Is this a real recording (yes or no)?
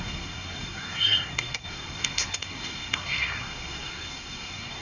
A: no